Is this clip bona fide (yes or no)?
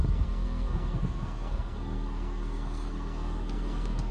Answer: no